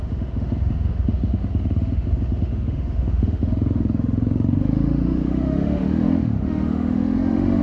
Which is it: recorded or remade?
remade